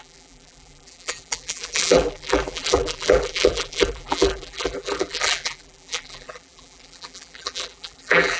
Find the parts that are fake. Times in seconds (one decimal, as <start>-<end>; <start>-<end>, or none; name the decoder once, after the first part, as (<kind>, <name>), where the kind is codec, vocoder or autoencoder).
0.0-8.4 (vocoder, BigVGAN v2)